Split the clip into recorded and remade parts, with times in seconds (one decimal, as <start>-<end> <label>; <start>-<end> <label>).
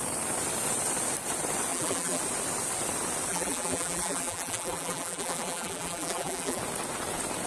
0.0-1.7 recorded; 1.7-2.2 remade; 2.2-3.3 recorded; 3.3-6.6 remade; 6.6-7.5 recorded